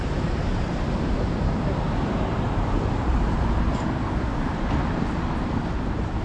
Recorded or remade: remade